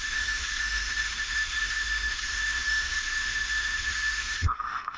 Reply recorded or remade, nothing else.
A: remade